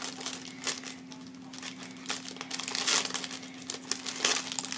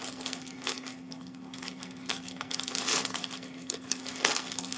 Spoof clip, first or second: second